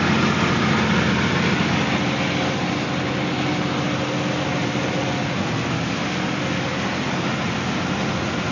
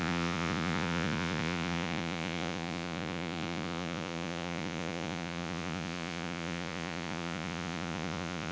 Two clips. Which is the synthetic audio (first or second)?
second